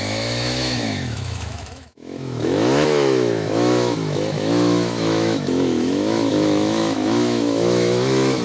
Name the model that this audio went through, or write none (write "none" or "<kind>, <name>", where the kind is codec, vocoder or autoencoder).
autoencoder, DAC-VAE